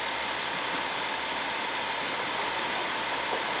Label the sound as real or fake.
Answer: fake